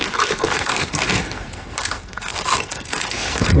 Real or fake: fake